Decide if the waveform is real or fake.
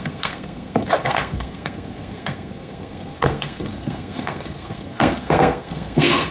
fake